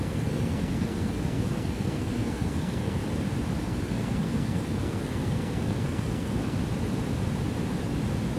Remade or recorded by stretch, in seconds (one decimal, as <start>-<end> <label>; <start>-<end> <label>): 0.0-3.0 remade; 3.0-3.6 recorded; 3.6-6.6 remade; 6.6-8.4 recorded